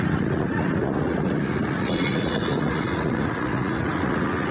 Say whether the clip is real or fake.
fake